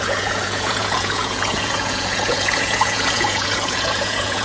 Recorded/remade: remade